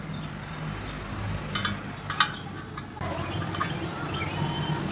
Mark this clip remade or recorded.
recorded